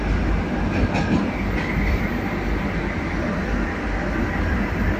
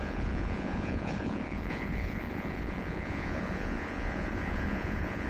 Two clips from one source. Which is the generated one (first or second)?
second